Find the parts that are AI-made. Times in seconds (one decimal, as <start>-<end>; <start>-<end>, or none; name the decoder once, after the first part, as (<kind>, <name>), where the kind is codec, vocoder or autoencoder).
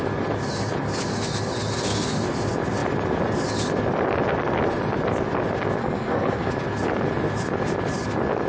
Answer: 5.8-6.5 (codec, SNAC)